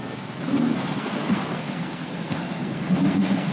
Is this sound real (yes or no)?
no